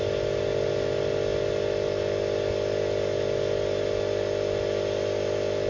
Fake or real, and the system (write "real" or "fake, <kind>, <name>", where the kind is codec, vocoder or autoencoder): real